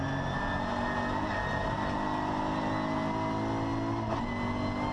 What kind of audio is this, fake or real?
real